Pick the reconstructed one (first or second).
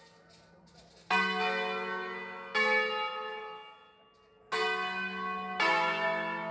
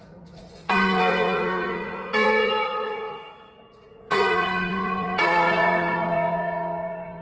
second